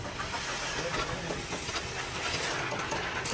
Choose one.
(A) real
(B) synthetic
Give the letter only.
A